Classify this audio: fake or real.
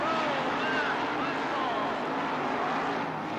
real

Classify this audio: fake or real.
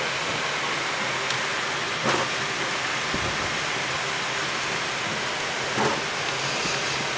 real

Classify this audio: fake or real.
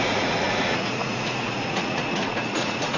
fake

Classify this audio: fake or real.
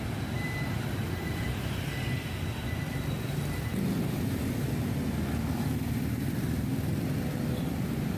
real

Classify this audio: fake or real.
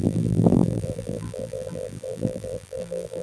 fake